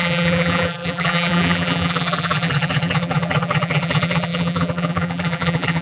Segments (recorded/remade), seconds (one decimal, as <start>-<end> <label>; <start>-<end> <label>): 0.0-5.8 remade